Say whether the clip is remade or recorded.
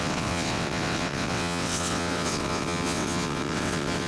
remade